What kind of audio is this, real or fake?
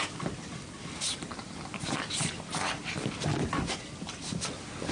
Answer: real